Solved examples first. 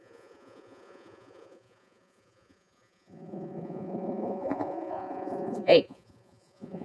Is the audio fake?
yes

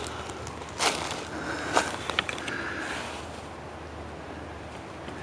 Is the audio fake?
no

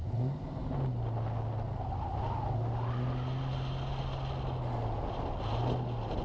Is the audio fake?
no